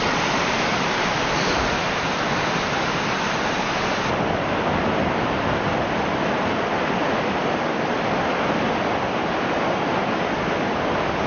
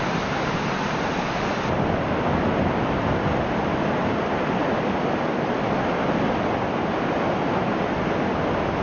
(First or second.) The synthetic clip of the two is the first